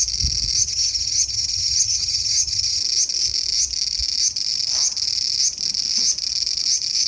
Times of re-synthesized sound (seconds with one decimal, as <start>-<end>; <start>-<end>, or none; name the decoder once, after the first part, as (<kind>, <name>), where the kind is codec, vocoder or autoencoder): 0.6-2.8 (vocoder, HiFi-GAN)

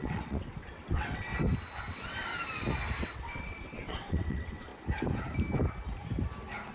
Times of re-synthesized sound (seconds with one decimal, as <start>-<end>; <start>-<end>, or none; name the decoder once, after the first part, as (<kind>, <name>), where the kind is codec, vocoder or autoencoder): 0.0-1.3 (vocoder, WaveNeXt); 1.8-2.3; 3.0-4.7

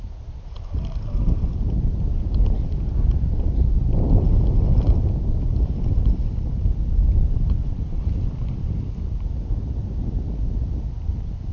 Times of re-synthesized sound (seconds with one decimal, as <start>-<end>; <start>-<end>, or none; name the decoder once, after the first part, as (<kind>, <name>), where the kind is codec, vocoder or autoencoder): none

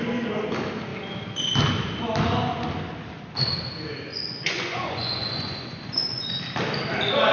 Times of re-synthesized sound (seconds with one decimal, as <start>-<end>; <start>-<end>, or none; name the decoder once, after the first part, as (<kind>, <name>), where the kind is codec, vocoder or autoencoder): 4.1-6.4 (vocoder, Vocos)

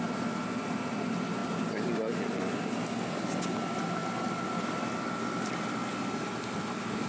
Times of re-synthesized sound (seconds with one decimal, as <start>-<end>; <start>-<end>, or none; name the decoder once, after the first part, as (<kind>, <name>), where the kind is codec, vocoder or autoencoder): none